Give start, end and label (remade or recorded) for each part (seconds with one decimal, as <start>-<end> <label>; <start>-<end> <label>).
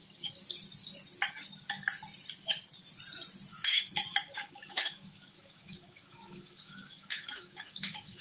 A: 0.0-3.5 recorded; 3.5-8.2 remade